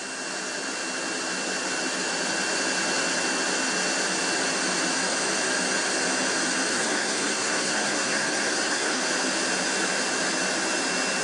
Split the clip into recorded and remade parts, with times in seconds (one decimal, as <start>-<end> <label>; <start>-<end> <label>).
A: 0.0-6.7 recorded; 6.7-9.0 remade; 9.0-11.2 recorded